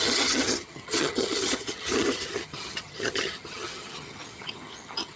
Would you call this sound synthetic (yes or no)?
yes